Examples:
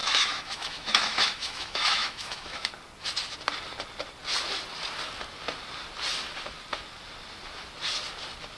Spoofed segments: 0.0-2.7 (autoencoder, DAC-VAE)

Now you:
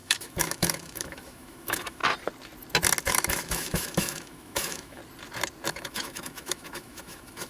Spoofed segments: 0.0-2.0 (autoencoder, DAC-VAE); 3.0-5.0; 5.7-7.5